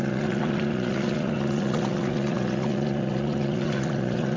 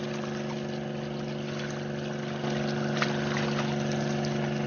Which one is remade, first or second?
first